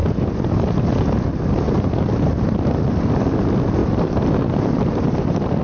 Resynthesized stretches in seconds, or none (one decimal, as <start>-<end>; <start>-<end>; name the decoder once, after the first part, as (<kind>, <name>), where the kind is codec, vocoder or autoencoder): 3.8-5.6 (vocoder, BigVGAN v2)

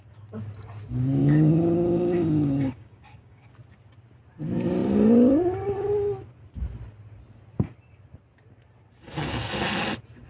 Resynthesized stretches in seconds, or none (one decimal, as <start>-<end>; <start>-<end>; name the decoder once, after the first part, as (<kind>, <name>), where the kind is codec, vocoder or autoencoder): 1.2-3.5 (codec, DAC)